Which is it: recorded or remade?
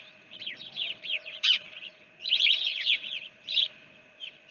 remade